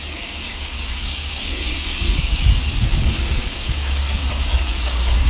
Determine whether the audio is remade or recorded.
remade